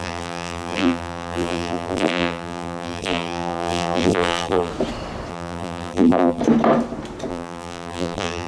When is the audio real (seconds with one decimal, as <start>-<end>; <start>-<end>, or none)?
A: 4.7-5.3; 6.4-7.3